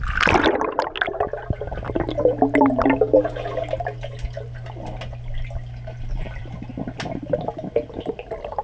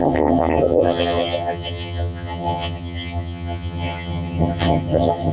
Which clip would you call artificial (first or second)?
second